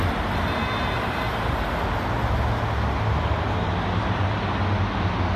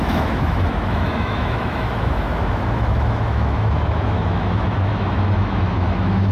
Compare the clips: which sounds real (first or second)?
first